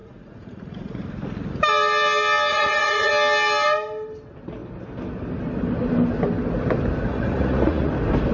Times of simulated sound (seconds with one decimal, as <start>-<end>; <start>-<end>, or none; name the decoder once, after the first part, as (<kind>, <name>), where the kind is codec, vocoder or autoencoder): 0.0-1.0 (vocoder, Vocos); 2.5-3.1; 7.1-7.9

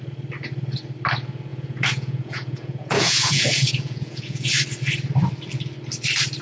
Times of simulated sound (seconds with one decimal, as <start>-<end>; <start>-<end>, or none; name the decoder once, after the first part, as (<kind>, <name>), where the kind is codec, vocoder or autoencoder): 1.5-4.5 (vocoder, Vocos)

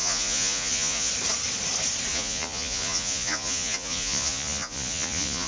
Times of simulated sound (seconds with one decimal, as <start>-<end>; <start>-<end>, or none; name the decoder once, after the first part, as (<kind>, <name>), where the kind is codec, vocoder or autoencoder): 0.0-1.1 (vocoder, Vocos); 2.1-5.5

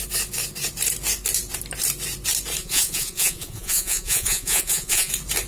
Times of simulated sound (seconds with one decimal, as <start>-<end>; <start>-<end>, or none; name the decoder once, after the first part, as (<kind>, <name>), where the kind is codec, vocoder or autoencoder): 2.6-5.1 (vocoder, Vocos)

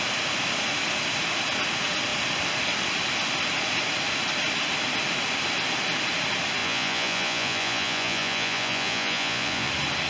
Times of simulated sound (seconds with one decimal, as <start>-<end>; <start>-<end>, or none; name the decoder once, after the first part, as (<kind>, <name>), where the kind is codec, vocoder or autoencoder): 6.6-9.7 (vocoder, Vocos)

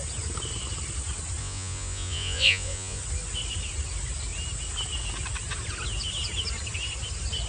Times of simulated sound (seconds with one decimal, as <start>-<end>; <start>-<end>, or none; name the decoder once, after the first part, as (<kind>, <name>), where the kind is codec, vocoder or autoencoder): 1.4-3.0 (vocoder, Vocos)